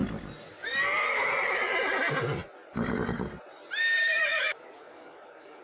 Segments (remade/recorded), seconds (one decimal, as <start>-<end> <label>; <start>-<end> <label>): 0.0-4.0 recorded; 4.0-5.6 remade